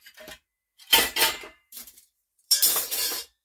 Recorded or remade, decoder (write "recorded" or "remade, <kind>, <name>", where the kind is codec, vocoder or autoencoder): remade, vocoder, BigVGAN v2